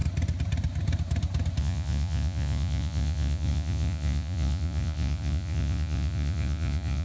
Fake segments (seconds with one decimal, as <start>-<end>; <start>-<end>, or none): 1.6-7.0